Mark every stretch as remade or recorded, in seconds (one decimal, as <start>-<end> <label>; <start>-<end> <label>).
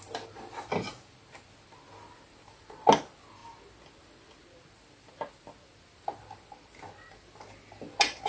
0.0-8.3 recorded